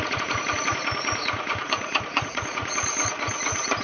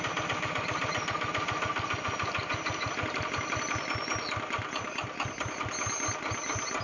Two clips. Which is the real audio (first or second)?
second